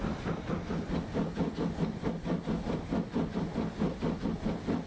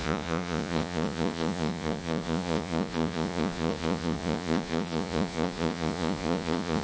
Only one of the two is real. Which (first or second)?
first